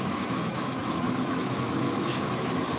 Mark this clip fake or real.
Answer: fake